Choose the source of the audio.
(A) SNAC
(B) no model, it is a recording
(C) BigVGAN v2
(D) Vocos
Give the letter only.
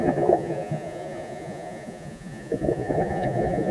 D